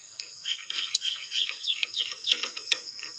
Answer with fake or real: fake